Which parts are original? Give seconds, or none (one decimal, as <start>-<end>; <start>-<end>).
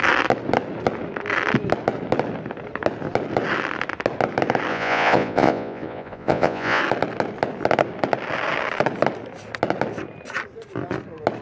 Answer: 0.0-4.7; 6.8-11.4